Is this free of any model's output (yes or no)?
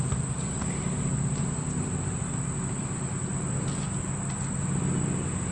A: yes